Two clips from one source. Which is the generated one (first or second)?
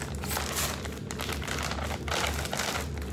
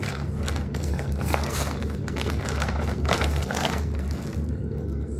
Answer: second